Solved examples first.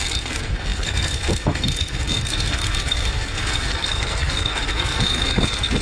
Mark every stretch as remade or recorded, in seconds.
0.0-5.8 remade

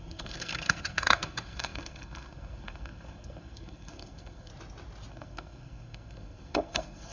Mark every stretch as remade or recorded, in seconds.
0.0-4.5 remade; 4.5-5.1 recorded; 5.1-7.1 remade

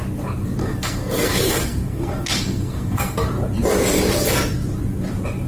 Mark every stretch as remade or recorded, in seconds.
0.0-0.6 recorded; 0.6-3.3 remade; 3.3-5.5 recorded

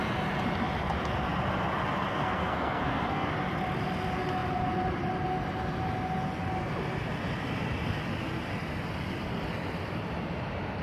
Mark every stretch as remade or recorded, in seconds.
0.0-2.1 recorded; 2.1-3.3 remade; 3.3-10.8 recorded

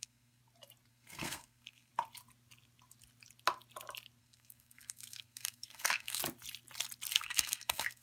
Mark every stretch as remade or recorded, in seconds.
0.0-0.4 remade; 0.4-0.9 recorded; 0.9-1.9 remade; 1.9-4.2 recorded; 4.2-6.2 remade; 6.2-7.1 recorded; 7.1-8.0 remade

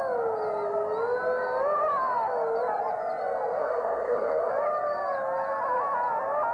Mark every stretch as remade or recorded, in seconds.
0.0-3.6 recorded; 3.6-4.5 remade; 4.5-6.5 recorded

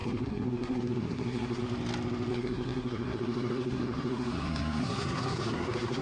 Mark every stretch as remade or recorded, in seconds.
0.0-1.6 remade; 1.6-2.3 recorded; 2.3-6.0 remade

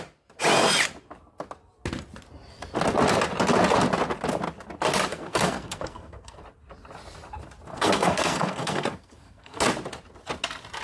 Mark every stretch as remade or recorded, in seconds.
0.0-5.1 recorded; 5.1-6.4 remade; 6.4-7.7 recorded; 7.7-9.6 remade; 9.6-10.8 recorded